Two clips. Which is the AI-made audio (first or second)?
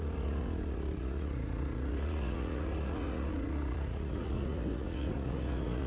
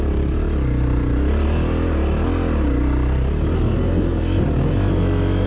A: first